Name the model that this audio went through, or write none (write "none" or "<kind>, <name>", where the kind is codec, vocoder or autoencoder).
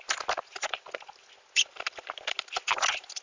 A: none